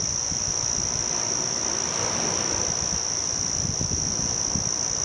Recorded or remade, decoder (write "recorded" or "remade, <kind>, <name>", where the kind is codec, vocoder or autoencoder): recorded